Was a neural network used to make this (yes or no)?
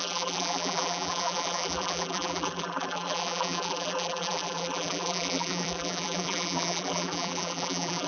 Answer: yes